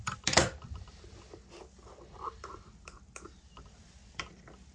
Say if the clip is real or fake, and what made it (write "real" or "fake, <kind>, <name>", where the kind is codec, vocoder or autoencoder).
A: fake, vocoder, BigVGAN v2